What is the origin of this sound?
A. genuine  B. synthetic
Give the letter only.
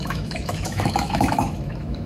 B